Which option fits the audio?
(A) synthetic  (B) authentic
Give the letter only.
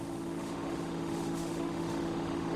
A